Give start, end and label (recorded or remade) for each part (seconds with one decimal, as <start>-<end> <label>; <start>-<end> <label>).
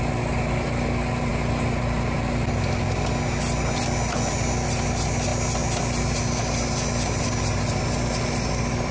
0.0-8.9 recorded